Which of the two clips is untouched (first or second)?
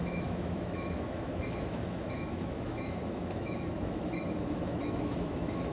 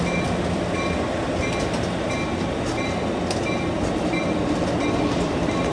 second